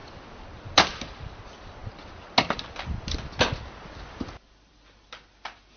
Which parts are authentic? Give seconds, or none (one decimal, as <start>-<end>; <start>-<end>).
0.0-5.8